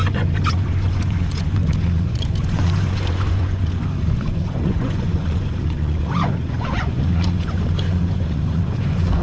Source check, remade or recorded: remade